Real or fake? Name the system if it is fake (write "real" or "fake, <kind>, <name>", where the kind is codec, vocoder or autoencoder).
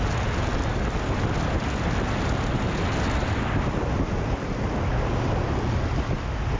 real